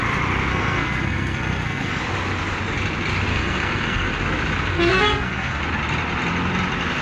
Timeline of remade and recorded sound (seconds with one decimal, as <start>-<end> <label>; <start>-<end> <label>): 0.0-0.5 recorded; 0.5-2.0 remade; 2.0-3.3 recorded; 3.3-4.1 remade; 4.1-4.7 recorded; 4.7-5.6 remade; 5.6-7.0 recorded